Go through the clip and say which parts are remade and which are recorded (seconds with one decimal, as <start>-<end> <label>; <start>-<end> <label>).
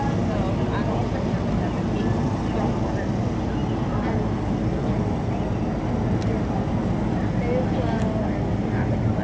0.0-9.2 recorded